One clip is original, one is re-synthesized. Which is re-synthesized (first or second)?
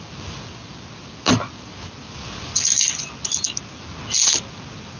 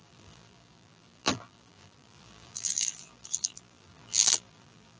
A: second